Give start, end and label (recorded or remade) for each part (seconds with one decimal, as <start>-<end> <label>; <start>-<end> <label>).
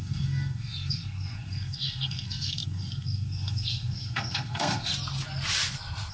0.0-4.9 remade; 4.9-6.1 recorded